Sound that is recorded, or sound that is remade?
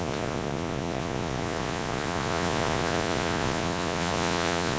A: remade